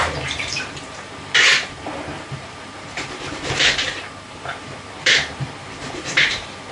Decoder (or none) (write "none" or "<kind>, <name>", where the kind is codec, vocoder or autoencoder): vocoder, BigVGAN v2